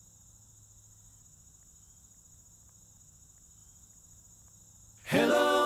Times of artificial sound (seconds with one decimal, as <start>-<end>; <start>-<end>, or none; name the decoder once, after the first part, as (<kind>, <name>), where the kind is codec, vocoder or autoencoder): none